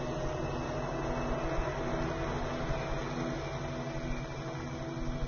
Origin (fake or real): real